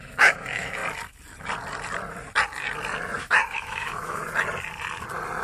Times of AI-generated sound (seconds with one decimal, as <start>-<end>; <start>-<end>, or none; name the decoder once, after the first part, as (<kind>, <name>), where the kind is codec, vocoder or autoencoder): 0.0-0.8 (autoencoder, DAC-VAE); 3.2-4.2